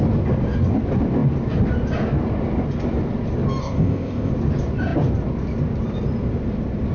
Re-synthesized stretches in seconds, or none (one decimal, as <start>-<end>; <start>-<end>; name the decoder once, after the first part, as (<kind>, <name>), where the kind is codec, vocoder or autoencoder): 3.6-4.3 (codec, ZipCodec)